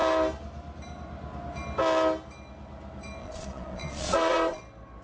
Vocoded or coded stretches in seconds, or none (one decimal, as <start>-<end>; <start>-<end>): 3.2-4.6